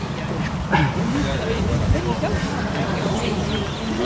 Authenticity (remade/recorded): recorded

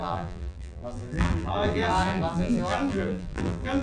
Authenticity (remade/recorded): remade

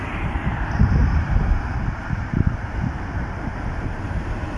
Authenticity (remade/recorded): remade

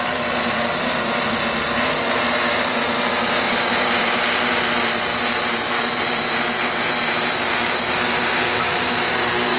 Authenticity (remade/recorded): remade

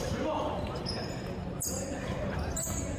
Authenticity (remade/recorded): remade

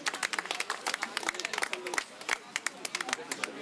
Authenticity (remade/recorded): recorded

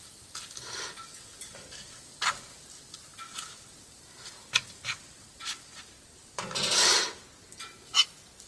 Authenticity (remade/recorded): recorded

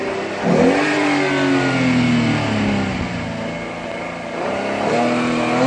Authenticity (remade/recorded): recorded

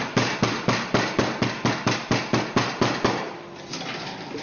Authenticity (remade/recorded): recorded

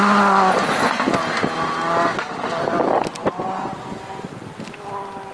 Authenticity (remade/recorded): recorded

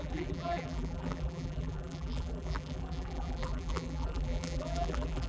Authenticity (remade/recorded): remade